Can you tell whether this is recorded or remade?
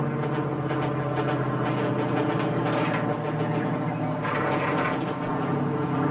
recorded